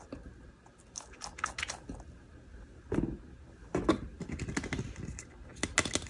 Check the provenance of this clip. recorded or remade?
recorded